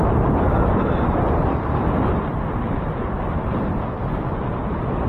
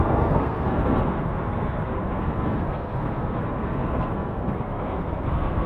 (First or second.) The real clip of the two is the first